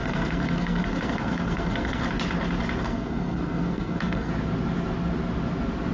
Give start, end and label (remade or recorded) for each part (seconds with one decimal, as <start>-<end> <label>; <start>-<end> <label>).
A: 0.0-2.0 remade; 2.0-2.8 recorded; 2.8-4.3 remade; 4.3-5.9 recorded